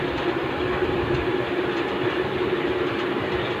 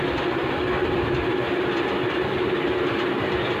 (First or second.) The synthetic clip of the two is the first